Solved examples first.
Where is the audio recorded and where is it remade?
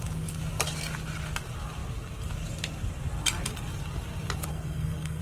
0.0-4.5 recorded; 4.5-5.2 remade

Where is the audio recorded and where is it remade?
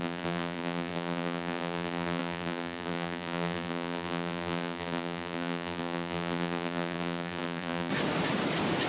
0.0-7.9 remade; 7.9-8.9 recorded